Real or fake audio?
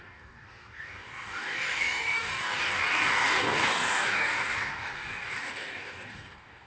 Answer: fake